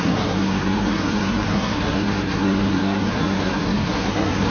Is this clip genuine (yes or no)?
no